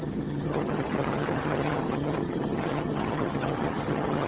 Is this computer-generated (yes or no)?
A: yes